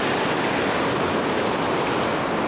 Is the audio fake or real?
real